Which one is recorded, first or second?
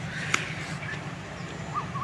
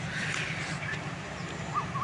first